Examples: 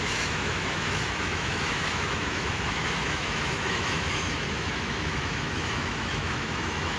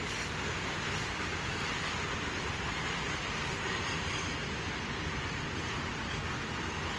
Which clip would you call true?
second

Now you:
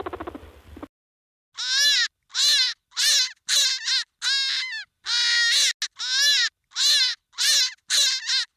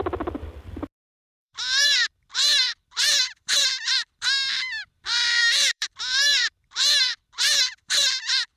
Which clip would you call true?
first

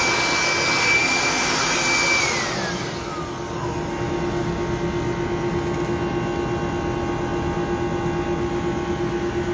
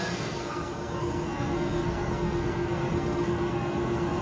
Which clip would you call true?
first